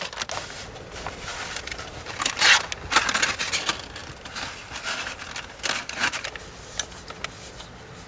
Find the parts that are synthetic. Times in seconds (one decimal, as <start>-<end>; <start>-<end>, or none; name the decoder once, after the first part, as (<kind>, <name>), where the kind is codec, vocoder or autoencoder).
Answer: none